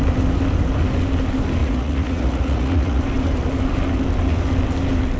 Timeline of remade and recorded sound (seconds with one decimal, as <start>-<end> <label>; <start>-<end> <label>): 0.0-1.6 recorded; 1.6-3.0 remade; 3.0-5.2 recorded